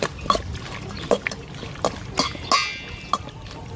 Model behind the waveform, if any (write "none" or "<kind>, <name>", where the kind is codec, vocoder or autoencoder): none